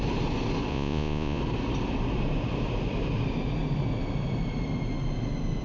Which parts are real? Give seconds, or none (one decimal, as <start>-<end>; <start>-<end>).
0.0-0.7; 1.4-5.6